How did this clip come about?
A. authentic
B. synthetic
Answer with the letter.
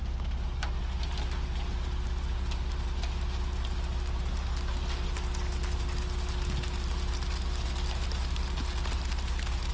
A